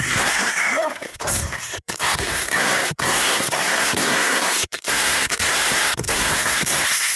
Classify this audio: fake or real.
fake